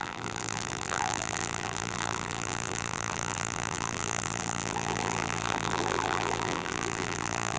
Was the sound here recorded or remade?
remade